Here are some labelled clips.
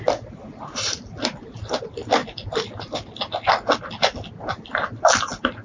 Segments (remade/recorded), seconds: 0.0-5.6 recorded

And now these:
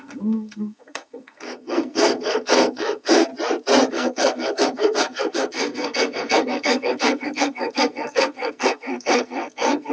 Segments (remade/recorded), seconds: 0.0-3.3 remade; 3.3-3.9 recorded; 3.9-9.9 remade

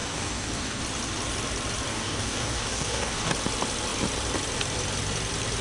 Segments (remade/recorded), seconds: 0.0-0.8 remade; 0.8-1.9 recorded; 1.9-3.3 remade; 3.3-5.6 recorded